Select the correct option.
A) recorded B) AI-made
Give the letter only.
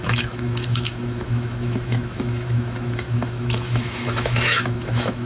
B